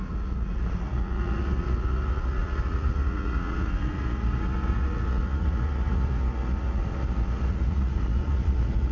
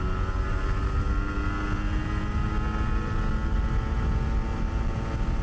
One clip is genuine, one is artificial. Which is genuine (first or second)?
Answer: second